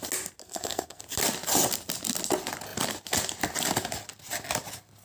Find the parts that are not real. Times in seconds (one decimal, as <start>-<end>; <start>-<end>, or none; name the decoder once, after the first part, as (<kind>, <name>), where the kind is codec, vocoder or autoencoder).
0.4-1.0 (codec, SNAC)